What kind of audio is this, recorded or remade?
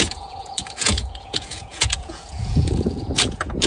remade